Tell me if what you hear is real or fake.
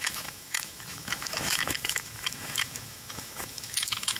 fake